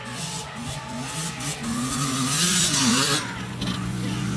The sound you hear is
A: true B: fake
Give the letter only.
B